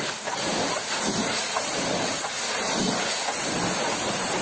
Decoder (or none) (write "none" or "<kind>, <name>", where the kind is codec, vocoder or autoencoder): vocoder, BigVGAN v2